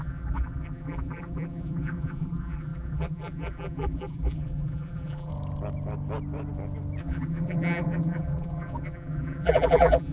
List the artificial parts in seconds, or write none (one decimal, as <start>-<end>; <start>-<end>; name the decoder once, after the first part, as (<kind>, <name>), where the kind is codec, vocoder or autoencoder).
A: 0.0-5.3 (vocoder, BigVGAN v2); 7.0-10.1